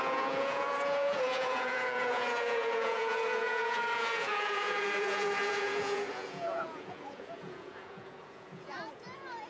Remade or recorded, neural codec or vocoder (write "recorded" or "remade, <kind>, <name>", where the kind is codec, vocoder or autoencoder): remade, vocoder, Vocos